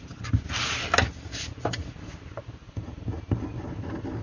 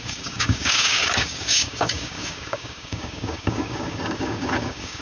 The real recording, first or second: first